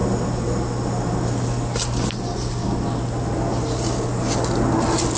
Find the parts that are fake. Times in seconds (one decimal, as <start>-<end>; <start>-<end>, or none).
none